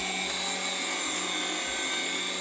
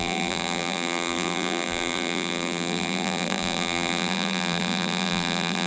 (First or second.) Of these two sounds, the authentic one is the first